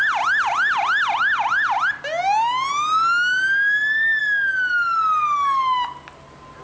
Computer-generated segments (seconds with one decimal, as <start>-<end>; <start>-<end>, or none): none

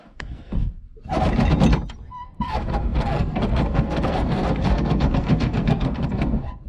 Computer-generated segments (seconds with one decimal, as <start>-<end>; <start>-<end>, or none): 0.0-0.9; 2.1-6.7